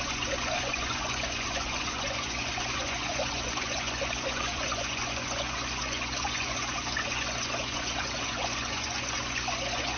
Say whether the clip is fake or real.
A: fake